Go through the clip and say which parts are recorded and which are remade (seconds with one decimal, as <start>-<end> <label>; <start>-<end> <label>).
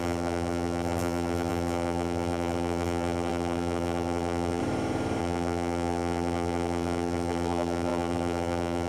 0.0-4.6 remade; 4.6-5.2 recorded; 5.2-8.9 remade